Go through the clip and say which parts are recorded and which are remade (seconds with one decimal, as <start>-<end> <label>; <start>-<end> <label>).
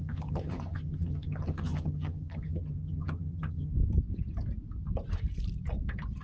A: 0.0-3.7 remade; 3.7-6.2 recorded